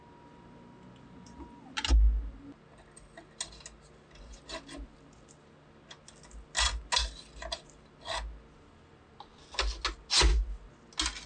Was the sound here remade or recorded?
recorded